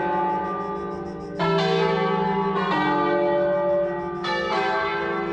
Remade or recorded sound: recorded